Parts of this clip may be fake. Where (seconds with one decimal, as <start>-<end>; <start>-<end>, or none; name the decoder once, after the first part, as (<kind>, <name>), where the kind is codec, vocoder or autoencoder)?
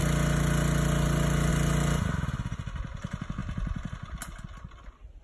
none